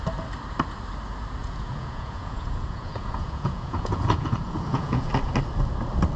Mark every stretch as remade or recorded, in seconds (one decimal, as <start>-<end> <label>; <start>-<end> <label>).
0.0-1.4 recorded; 1.4-5.1 remade; 5.1-6.2 recorded